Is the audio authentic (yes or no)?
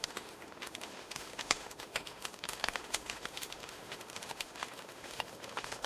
no